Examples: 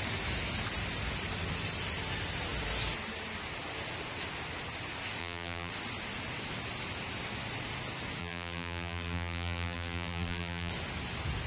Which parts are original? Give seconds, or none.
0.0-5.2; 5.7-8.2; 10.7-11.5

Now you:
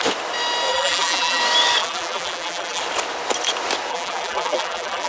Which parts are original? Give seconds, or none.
0.0-0.7; 1.4-1.8; 2.8-3.9

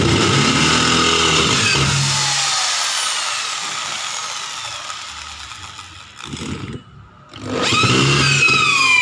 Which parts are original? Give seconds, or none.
0.0-9.0

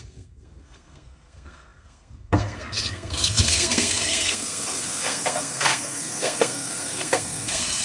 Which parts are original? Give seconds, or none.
none

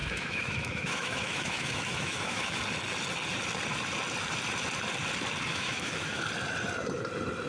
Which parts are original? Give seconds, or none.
2.6-5.5; 6.2-7.5

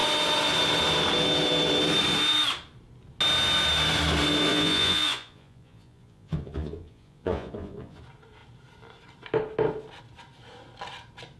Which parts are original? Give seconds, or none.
0.0-4.5; 8.0-11.4